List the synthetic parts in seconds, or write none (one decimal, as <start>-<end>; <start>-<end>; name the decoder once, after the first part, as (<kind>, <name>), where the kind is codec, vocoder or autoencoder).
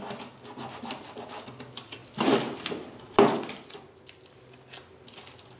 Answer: none